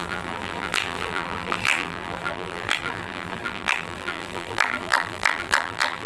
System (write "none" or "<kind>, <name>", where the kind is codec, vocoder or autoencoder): vocoder, BigVGAN v2